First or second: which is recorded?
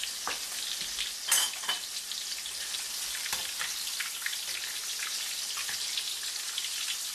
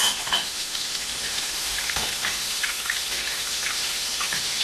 first